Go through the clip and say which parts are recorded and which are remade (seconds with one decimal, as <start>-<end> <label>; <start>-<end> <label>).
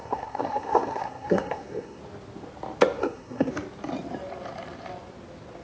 0.0-2.0 remade; 2.0-3.0 recorded; 3.0-3.5 remade; 3.5-5.6 recorded